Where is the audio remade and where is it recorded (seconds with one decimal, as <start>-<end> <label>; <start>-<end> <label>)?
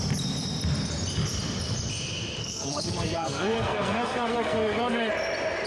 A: 0.0-2.4 recorded; 2.4-5.1 remade; 5.1-5.7 recorded